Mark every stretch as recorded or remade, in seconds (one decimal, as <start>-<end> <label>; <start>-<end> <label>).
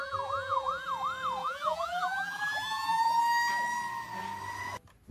0.0-0.9 remade; 0.9-1.4 recorded; 1.4-3.2 remade; 3.2-5.1 recorded